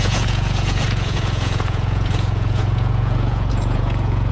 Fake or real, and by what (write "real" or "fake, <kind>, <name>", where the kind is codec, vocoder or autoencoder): fake, vocoder, Vocos